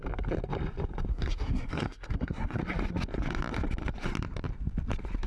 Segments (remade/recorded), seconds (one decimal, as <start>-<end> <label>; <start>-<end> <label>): 0.0-1.1 recorded; 1.1-2.6 remade; 2.6-5.3 recorded